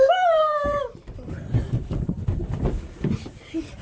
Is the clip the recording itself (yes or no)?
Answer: no